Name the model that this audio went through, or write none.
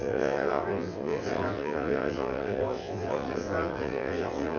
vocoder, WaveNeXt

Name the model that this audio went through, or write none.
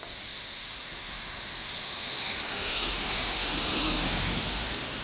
autoencoder, DAC-VAE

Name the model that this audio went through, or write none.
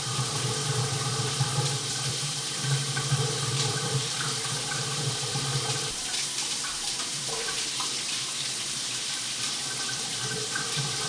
vocoder, BigVGAN v2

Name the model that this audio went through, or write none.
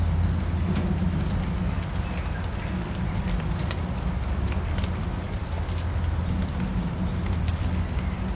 none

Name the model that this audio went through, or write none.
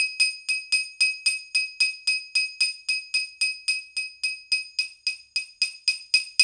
none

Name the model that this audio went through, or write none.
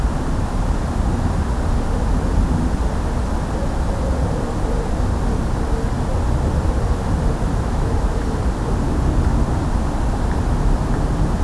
none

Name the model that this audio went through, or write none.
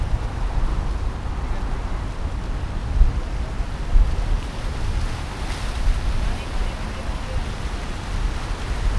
none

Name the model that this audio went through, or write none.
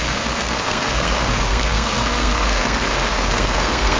codec, SNAC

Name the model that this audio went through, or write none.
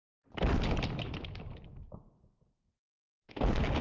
none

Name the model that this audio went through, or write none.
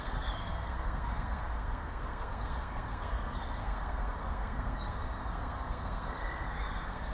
codec, SNAC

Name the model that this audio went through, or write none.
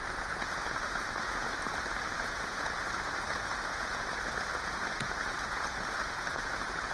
vocoder, Vocos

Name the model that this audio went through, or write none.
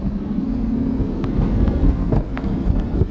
codec, SNAC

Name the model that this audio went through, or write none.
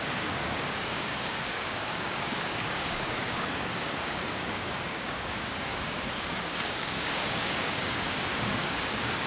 codec, DAC